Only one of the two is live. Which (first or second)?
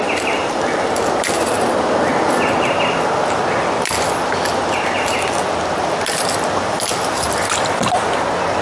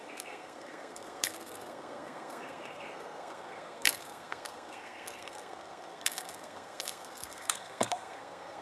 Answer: first